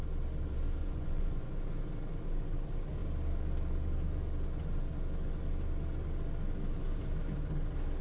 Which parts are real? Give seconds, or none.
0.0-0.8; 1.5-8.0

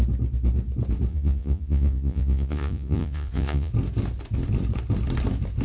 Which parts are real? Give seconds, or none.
0.0-1.1; 3.7-5.6

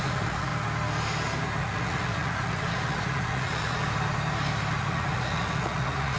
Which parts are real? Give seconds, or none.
0.5-1.6; 3.8-4.8

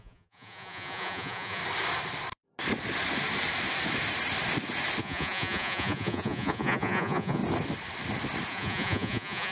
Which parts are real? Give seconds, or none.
1.6-5.0; 7.4-8.5